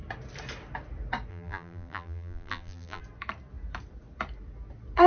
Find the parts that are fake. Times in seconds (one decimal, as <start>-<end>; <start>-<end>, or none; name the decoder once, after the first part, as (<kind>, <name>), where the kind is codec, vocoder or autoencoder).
1.3-3.0 (vocoder, BigVGAN v2)